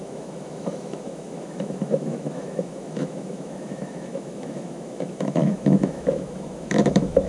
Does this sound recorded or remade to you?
remade